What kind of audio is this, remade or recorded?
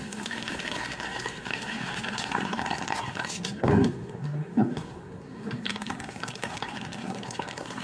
remade